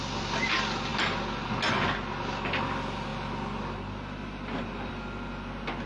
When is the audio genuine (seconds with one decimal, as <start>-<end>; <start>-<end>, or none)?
0.0-5.9